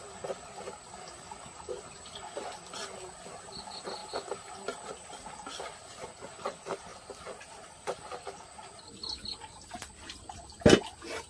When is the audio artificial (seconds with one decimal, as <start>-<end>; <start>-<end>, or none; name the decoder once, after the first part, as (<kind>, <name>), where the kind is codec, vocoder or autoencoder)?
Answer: none